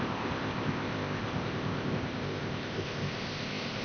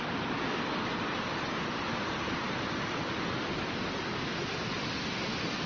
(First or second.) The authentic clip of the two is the second